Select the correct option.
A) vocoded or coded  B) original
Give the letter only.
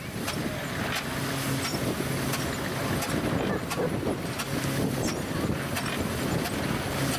B